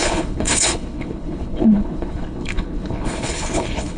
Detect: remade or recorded remade